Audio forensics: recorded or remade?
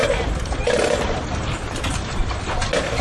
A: recorded